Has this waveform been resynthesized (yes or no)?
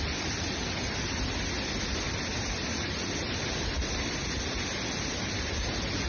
no